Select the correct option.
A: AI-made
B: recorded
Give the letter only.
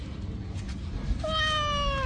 B